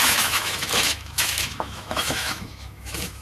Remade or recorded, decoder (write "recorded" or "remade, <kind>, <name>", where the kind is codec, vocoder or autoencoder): remade, autoencoder, DAC-VAE